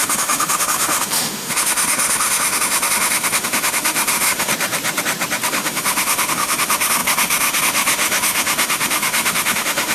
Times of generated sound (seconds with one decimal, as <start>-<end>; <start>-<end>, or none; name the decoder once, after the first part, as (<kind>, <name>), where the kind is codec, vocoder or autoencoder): 0.0-4.5 (autoencoder, DAC-VAE); 5.5-9.9

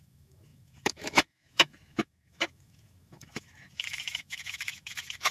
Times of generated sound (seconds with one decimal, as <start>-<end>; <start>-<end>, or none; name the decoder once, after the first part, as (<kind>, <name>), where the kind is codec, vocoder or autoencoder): 0.0-5.3 (autoencoder, DAC-VAE)

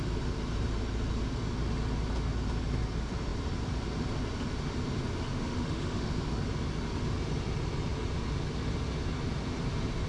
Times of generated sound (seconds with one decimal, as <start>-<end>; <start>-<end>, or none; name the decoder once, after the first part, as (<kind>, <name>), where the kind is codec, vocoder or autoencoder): 5.3-6.1 (autoencoder, DAC-VAE)

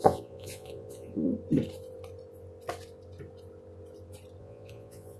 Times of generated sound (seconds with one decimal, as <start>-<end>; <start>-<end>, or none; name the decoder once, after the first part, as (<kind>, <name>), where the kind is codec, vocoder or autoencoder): 0.0-1.3 (vocoder, Vocos); 4.4-5.2

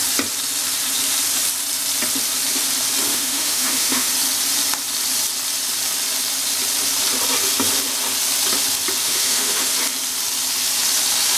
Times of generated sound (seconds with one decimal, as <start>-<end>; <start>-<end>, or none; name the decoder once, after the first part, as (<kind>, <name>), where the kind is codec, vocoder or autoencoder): 3.1-4.1 (autoencoder, DAC-VAE); 9.0-9.7

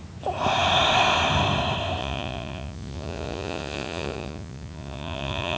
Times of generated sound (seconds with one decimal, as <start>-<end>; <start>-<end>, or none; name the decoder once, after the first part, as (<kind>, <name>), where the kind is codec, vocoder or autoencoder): 2.0-5.6 (vocoder, Vocos)